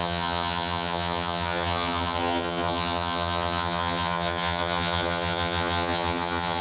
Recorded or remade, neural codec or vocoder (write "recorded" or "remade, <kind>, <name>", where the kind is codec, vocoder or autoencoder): remade, vocoder, HiFi-GAN